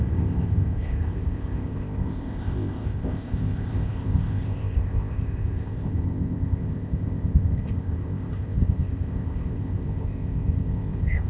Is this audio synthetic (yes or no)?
yes